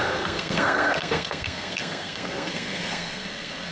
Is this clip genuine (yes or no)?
no